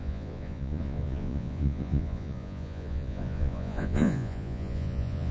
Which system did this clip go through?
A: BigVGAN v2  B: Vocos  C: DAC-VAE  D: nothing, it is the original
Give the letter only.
B